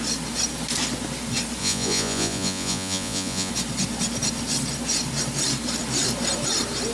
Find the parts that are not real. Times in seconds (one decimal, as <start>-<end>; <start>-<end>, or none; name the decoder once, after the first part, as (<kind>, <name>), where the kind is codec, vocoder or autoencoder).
1.6-3.5 (vocoder, Vocos)